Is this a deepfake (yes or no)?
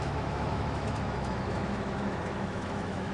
yes